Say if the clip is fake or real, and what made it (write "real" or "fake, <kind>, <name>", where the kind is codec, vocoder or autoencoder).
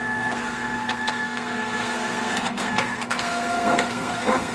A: fake, codec, SNAC